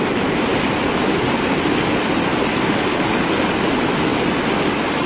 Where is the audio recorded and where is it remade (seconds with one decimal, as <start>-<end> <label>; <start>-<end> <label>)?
0.0-5.1 recorded